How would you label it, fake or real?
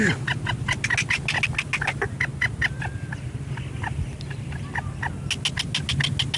real